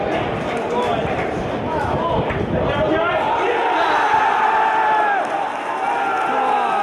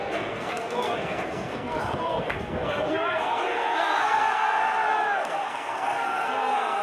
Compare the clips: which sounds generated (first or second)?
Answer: second